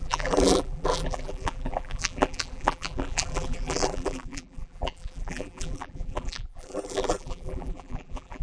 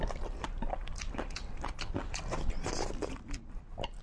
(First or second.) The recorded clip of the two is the second